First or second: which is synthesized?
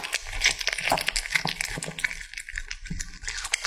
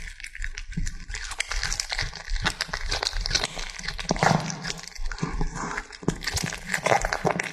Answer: second